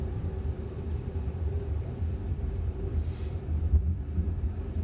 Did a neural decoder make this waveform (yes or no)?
yes